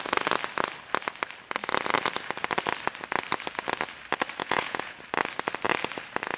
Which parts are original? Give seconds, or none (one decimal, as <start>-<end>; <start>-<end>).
0.0-4.4; 5.0-6.4